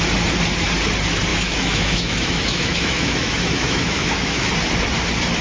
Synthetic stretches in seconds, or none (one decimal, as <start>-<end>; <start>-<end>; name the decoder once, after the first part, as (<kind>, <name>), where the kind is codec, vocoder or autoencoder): 1.3-4.5 (autoencoder, DAC-VAE)